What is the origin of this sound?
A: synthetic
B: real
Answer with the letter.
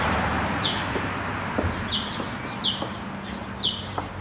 B